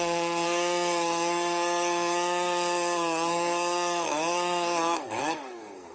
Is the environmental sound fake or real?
fake